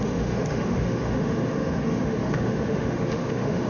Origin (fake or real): fake